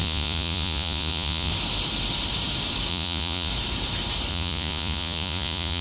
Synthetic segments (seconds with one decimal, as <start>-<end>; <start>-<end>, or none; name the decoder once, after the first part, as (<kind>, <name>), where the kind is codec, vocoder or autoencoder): 0.0-1.5 (vocoder, Vocos); 2.9-3.5; 4.3-5.8